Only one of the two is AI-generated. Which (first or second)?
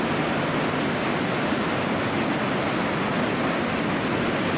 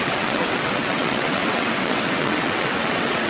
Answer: second